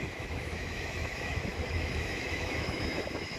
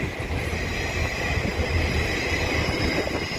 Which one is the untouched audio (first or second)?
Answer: second